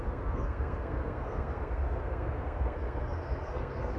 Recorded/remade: remade